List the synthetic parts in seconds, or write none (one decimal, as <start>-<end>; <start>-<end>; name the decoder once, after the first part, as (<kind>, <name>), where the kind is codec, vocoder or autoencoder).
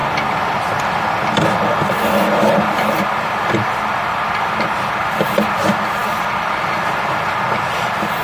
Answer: none